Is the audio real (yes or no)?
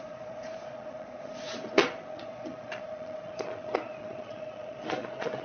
no